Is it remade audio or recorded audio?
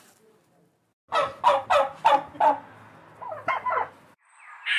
recorded